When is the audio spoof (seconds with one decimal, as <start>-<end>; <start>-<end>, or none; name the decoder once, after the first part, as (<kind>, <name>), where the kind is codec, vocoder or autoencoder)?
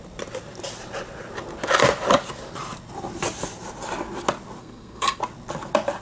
4.6-5.2 (codec, SNAC)